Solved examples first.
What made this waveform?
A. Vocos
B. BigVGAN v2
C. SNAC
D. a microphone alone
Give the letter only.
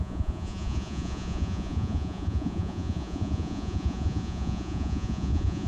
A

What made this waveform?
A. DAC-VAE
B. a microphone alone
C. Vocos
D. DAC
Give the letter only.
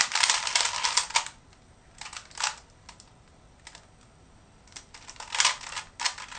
B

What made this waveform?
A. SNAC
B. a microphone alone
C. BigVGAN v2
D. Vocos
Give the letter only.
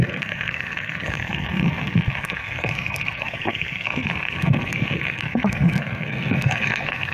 A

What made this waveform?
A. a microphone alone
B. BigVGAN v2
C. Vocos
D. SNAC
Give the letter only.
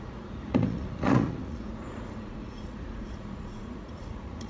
C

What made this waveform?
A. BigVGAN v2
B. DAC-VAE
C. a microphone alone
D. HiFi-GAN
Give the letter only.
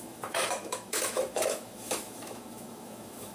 B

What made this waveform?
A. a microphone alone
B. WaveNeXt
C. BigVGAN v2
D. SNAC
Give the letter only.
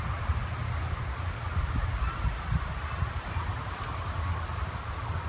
A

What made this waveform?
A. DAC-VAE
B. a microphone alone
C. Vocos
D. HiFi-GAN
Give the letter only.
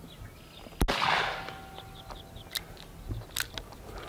B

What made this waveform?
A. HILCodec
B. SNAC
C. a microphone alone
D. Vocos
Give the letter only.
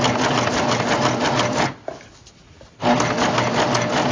C